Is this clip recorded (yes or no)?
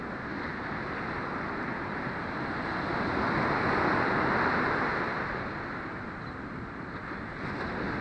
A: yes